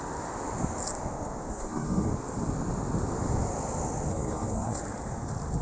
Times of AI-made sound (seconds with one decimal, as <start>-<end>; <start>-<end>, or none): 1.5-2.1; 4.1-4.8